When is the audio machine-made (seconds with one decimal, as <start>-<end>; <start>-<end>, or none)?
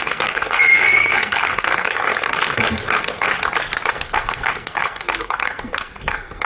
0.0-3.3; 3.9-6.5